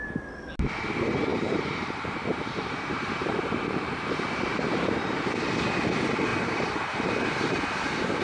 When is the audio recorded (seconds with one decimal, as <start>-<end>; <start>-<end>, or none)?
0.0-1.3; 5.3-6.3; 7.5-8.2